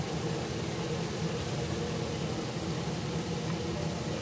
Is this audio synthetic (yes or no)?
no